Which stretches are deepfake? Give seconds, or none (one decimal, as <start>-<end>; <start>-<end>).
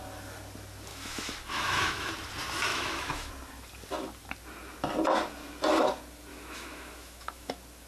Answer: 0.9-2.1; 2.7-3.3; 6.3-7.5